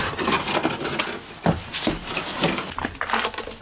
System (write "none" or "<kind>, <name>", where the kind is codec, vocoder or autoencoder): none